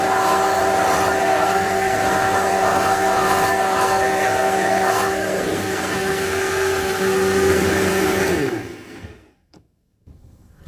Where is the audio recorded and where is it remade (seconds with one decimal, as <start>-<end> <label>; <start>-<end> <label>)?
0.0-0.6 remade; 0.6-1.2 recorded; 1.2-10.7 remade